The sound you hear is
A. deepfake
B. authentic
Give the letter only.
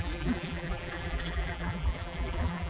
A